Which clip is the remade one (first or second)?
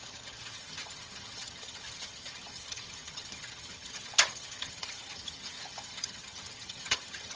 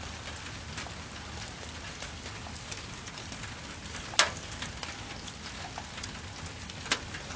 first